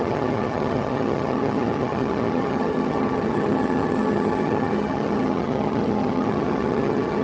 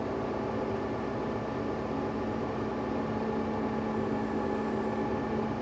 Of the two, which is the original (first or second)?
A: second